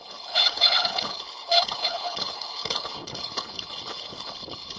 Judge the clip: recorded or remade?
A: remade